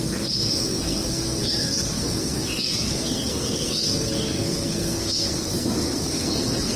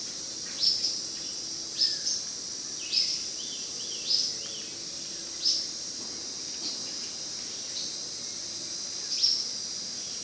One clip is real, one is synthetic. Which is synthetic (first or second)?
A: first